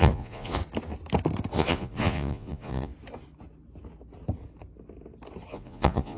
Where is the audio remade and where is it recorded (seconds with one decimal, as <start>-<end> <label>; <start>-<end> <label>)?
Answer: 0.0-0.6 remade; 0.6-1.5 recorded; 1.5-2.9 remade; 2.9-5.5 recorded; 5.5-6.2 remade